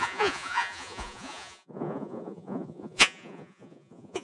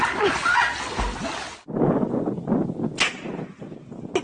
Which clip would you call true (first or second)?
second